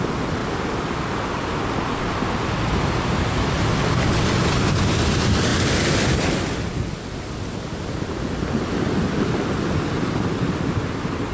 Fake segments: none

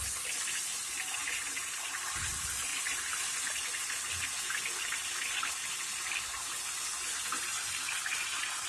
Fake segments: none

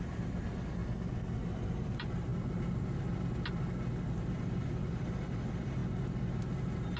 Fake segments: 0.0-0.8; 1.6-2.3; 4.1-5.8; 6.5-7.0

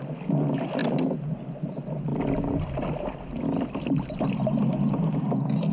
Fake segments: none

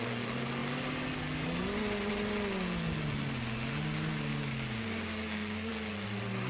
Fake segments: 4.3-5.7

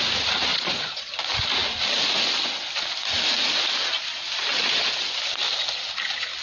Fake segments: 0.5-1.1